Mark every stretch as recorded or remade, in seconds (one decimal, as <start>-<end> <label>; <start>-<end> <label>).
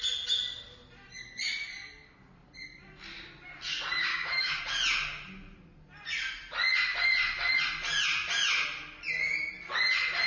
0.0-4.1 recorded; 4.1-4.6 remade; 4.6-10.3 recorded